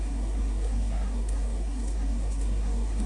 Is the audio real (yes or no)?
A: no